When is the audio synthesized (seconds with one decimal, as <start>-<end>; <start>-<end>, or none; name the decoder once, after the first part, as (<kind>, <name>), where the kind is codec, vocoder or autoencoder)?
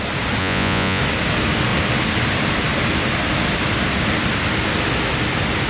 0.4-1.0 (vocoder, Vocos)